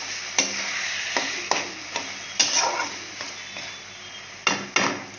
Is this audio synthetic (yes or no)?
no